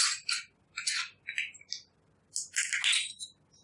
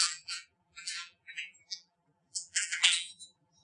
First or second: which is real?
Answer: first